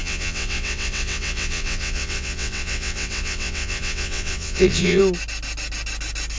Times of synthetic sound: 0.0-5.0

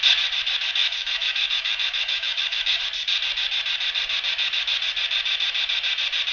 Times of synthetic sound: 0.8-2.8

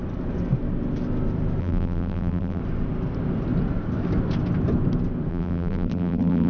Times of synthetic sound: 1.6-2.6; 5.3-6.5

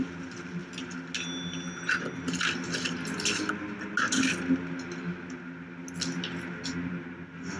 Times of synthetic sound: none

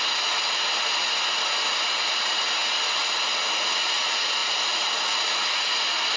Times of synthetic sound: 2.6-3.3; 4.4-5.3

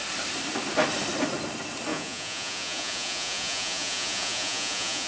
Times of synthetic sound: 1.9-5.1

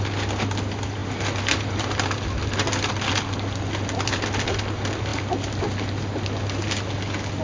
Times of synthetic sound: none